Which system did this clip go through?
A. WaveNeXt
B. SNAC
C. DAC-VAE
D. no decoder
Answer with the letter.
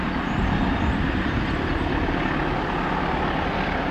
D